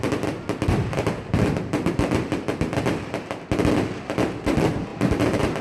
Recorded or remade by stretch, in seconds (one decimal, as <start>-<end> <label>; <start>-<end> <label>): 0.0-4.9 recorded; 4.9-5.6 remade